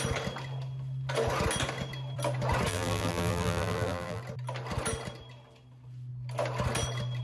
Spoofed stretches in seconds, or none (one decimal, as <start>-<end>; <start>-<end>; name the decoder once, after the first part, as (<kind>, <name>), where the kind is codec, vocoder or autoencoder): 2.7-4.2 (vocoder, BigVGAN v2)